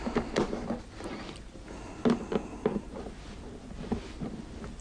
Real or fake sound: real